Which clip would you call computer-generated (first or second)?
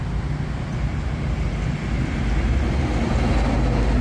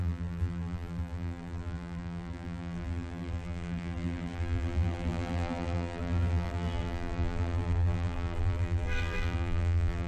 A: second